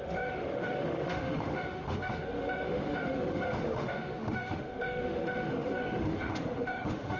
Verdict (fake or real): fake